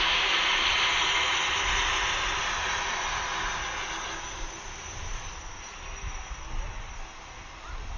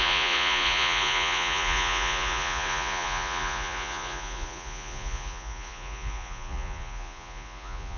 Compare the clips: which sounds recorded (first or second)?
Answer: first